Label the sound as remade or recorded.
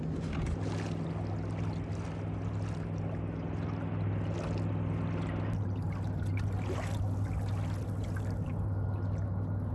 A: recorded